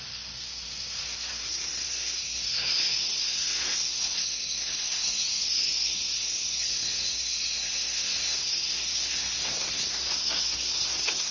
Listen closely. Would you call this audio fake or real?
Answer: fake